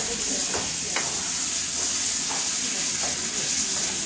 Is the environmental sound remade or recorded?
recorded